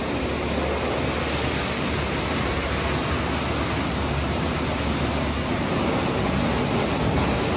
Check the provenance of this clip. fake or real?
real